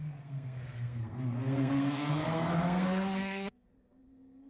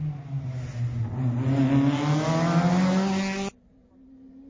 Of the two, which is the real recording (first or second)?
second